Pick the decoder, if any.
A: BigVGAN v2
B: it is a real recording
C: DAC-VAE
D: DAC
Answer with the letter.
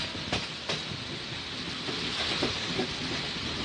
B